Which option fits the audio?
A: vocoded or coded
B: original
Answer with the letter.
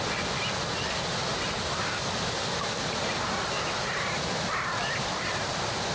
B